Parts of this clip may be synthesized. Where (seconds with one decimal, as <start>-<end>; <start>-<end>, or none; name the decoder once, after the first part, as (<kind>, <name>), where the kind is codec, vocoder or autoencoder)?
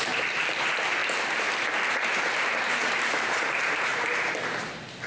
0.0-1.0 (vocoder, BigVGAN v2); 1.9-3.9